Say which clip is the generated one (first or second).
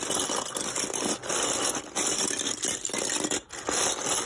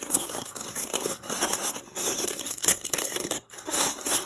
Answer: second